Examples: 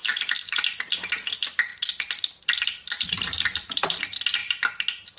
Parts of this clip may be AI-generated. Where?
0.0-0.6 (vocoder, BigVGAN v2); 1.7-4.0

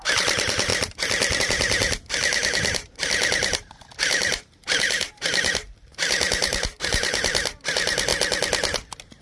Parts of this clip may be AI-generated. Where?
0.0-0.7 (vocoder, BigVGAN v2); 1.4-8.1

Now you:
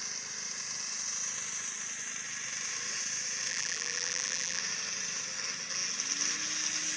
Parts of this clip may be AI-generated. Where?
3.5-4.6 (vocoder, BigVGAN v2)

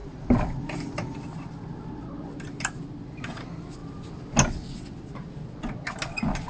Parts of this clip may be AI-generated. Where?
0.0-1.2 (vocoder, BigVGAN v2)